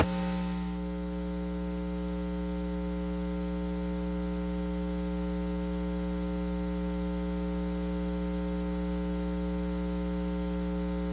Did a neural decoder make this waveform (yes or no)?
no